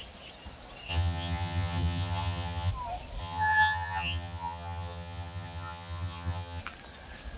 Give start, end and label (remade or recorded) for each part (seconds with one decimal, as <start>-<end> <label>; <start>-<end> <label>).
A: 0.0-0.9 recorded; 0.9-2.7 remade; 2.7-3.2 recorded; 3.2-6.6 remade; 6.6-7.4 recorded